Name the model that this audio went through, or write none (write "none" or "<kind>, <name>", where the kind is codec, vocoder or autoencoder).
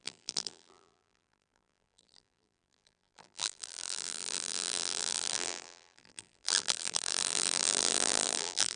vocoder, BigVGAN v2